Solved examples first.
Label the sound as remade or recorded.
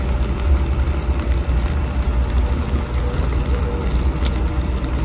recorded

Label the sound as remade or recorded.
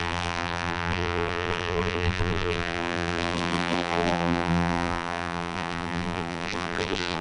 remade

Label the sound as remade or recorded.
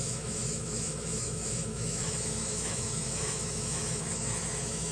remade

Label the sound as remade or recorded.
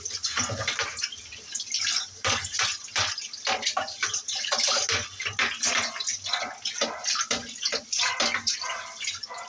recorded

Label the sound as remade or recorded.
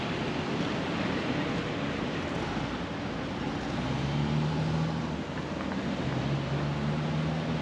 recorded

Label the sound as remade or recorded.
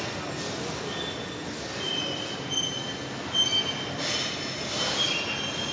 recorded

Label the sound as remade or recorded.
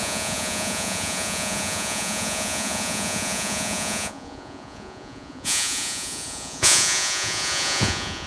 remade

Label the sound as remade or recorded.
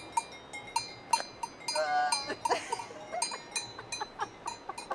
recorded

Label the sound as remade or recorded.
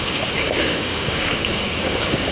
remade